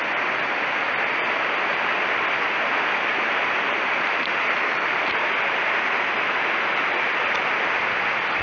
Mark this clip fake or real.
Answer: real